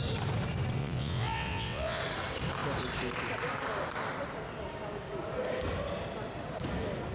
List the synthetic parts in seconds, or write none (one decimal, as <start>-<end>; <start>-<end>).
0.8-2.0